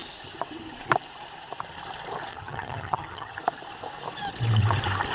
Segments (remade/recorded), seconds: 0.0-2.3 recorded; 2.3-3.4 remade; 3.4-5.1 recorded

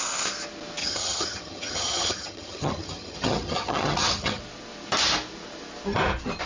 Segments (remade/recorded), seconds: 0.0-0.8 recorded; 0.8-4.4 remade; 4.4-6.5 recorded